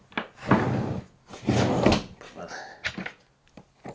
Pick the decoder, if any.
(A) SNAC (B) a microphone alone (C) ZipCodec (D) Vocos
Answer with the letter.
B